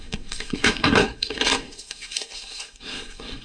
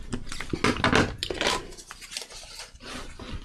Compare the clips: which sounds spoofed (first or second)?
first